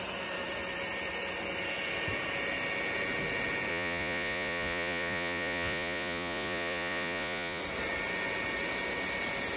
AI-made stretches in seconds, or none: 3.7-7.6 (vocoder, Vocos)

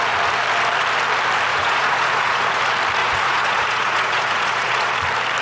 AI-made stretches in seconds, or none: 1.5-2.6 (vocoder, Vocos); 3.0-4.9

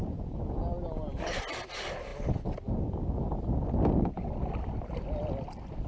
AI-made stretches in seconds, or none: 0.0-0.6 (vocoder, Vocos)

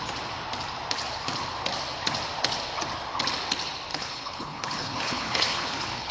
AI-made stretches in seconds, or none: 3.9-6.1 (codec, HILCodec)

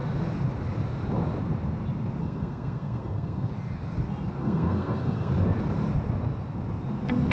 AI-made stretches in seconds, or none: 2.2-3.5 (codec, SNAC); 4.4-5.3

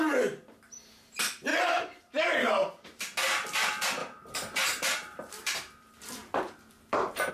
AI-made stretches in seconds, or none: 1.5-3.0 (vocoder, BigVGAN v2); 4.0-7.3

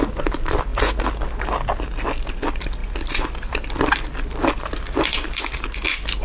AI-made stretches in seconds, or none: 0.0-0.7 (vocoder, BigVGAN v2); 2.3-6.2